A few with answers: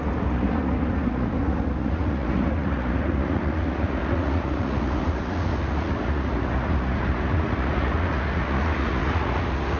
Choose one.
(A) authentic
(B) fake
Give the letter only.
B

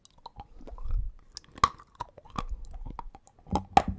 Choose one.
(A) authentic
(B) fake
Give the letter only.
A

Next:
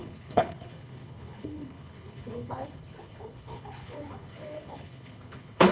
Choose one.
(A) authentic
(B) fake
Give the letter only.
B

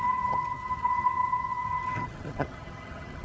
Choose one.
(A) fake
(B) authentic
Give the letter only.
A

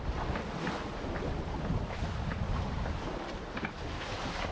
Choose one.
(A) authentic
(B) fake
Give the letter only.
A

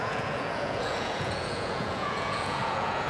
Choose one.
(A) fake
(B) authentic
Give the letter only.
A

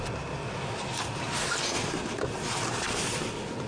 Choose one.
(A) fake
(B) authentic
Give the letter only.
B